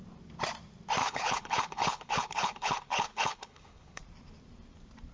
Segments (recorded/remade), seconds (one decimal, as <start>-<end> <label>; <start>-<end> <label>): 0.0-1.0 recorded; 1.0-4.0 remade; 4.0-5.1 recorded